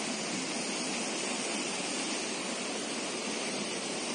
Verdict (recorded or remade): recorded